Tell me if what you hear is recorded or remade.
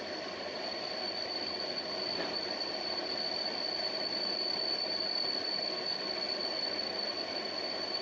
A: recorded